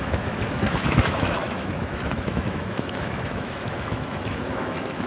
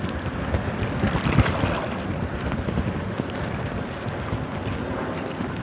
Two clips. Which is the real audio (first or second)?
second